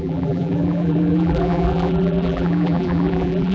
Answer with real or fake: fake